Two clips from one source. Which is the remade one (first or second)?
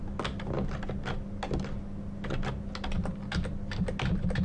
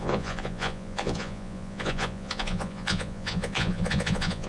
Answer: second